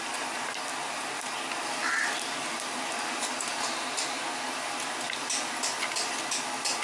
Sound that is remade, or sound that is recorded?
recorded